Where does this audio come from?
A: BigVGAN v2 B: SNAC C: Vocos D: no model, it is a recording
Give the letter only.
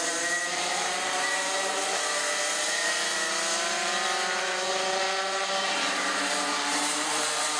A